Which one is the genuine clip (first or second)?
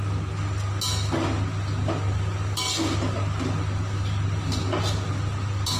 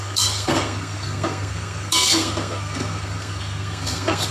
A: first